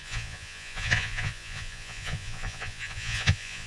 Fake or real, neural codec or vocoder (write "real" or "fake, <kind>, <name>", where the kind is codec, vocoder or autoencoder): fake, vocoder, Vocos